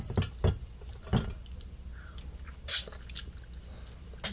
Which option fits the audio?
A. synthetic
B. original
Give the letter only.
B